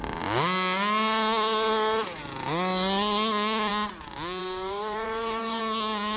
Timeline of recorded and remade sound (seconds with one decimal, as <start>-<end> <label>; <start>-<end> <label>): 0.0-4.4 recorded; 4.4-5.6 remade; 5.6-6.2 recorded